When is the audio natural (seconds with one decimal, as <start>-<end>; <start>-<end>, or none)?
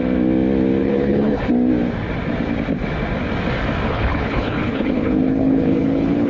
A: 0.0-0.8; 1.4-3.9